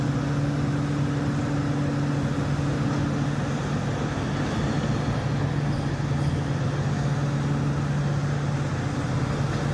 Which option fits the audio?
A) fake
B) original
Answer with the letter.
B